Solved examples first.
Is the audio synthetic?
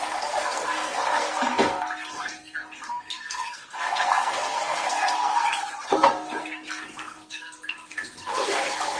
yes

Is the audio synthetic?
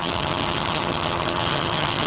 yes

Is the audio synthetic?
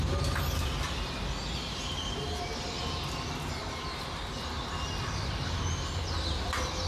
no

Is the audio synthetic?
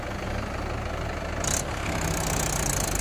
no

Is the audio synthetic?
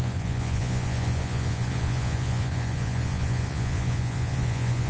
yes